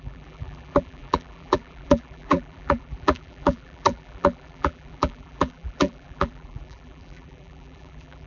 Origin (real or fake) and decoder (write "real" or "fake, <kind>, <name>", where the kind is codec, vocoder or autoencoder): fake, vocoder, BigVGAN v2